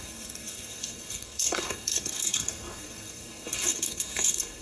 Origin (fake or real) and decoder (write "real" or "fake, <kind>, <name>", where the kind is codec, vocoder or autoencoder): fake, codec, SNAC